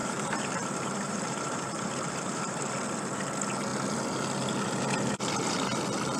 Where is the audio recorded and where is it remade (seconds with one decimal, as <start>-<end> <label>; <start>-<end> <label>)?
0.0-2.7 remade; 2.7-6.2 recorded